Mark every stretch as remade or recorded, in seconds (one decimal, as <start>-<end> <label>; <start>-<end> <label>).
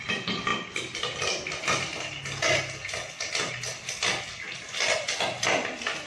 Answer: 0.0-6.1 recorded